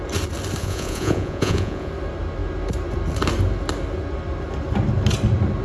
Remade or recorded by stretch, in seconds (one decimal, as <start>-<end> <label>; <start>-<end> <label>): 0.0-0.6 recorded; 0.6-1.9 remade; 1.9-5.6 recorded